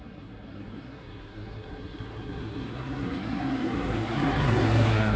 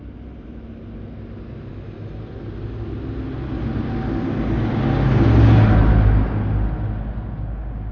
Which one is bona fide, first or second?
second